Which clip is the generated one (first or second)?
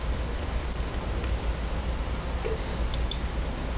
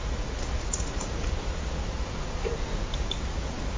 second